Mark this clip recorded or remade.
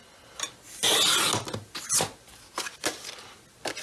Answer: recorded